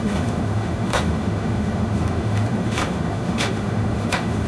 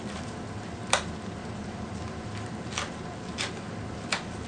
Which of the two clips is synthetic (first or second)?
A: first